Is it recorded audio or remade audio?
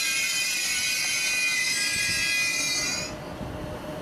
recorded